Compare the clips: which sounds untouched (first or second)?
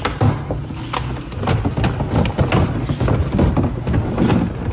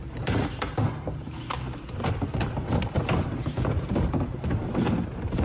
first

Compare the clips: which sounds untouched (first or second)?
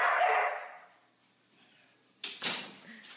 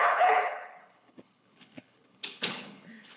first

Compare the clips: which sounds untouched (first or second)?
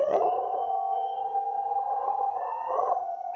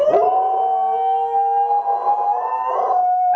second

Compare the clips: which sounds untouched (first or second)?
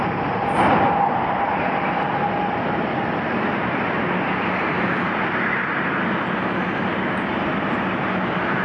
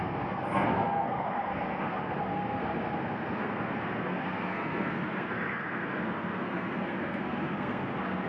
first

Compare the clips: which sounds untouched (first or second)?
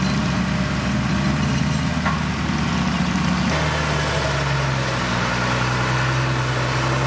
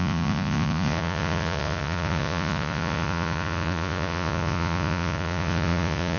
first